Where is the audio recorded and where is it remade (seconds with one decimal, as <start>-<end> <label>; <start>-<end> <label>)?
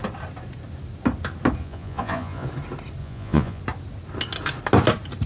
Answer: 0.0-1.6 recorded; 1.6-2.5 remade; 2.5-3.0 recorded; 3.0-3.6 remade; 3.6-5.3 recorded